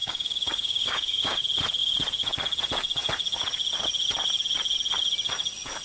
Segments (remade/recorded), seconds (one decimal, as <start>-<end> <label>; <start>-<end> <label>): 0.0-1.4 remade; 1.4-5.8 recorded